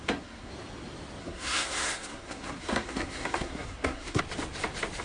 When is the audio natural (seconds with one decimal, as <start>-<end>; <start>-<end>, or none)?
0.5-1.2; 4.2-5.0